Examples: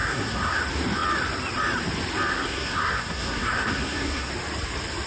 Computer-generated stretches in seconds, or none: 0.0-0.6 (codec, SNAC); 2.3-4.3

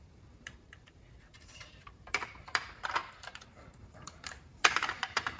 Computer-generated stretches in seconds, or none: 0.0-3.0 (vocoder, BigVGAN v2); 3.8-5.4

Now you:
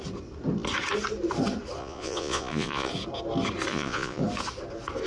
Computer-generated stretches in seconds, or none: 1.8-2.9 (vocoder, Vocos); 3.7-4.2

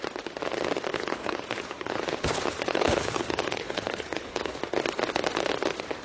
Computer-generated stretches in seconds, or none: 0.9-4.5 (codec, HILCodec)

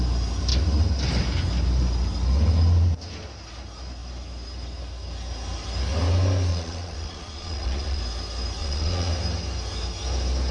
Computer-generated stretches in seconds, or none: 6.5-8.0 (vocoder, Vocos); 8.6-9.1